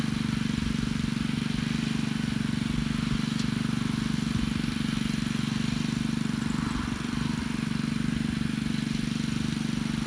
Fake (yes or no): no